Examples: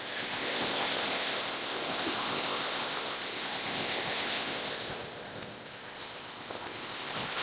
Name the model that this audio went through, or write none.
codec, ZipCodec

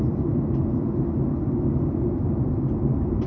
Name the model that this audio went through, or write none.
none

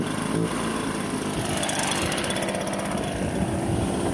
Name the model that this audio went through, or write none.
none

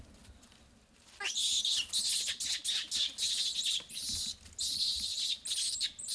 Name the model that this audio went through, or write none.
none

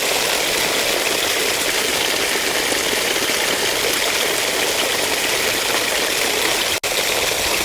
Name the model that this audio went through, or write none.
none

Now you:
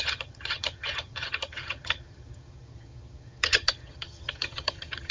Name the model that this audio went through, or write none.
vocoder, HiFi-GAN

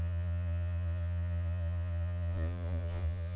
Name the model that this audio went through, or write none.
vocoder, Vocos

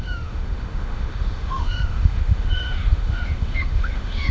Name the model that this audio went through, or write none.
autoencoder, DAC-VAE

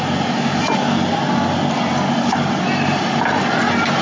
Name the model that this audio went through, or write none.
none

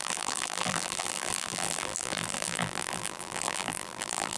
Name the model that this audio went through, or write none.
vocoder, BigVGAN v2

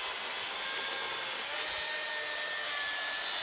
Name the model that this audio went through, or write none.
none